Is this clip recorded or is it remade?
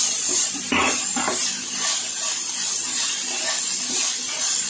recorded